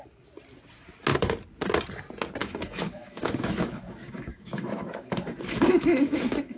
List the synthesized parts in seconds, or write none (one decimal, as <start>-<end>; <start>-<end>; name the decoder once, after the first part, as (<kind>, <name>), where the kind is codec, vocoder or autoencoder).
2.4-6.6 (autoencoder, DAC-VAE)